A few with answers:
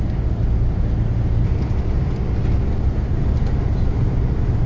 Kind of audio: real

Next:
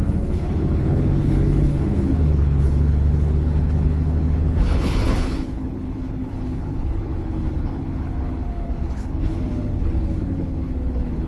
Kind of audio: fake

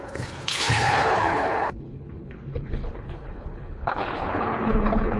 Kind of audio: fake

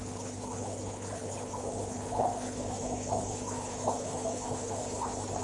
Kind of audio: fake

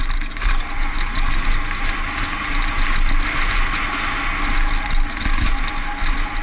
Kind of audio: real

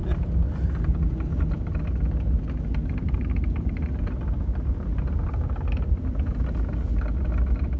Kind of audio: real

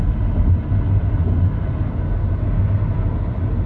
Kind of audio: real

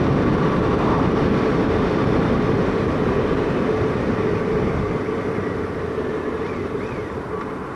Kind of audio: real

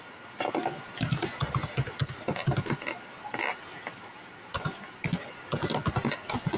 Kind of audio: real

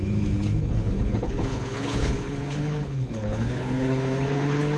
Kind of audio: fake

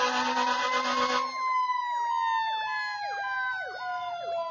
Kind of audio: real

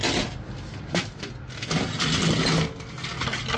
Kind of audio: real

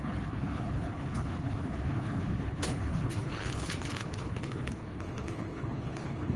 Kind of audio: fake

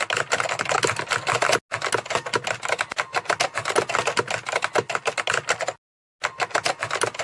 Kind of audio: real